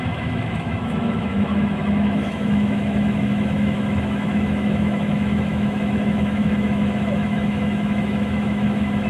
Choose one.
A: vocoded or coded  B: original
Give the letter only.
A